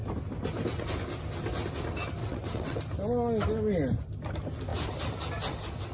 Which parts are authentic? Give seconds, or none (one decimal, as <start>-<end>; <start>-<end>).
0.0-2.2; 2.8-5.9